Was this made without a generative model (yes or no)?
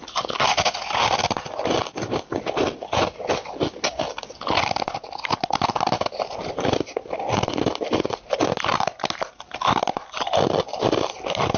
yes